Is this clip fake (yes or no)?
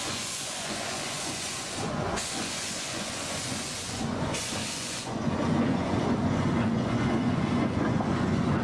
yes